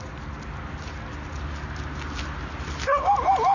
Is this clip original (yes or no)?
yes